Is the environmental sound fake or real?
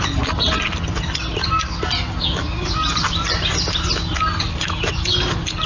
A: real